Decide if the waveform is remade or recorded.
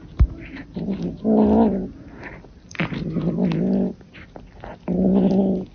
recorded